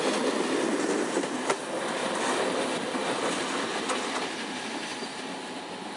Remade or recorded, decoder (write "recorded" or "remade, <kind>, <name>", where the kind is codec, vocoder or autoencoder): recorded